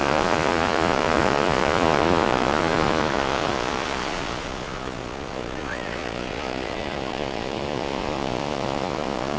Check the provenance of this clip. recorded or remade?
remade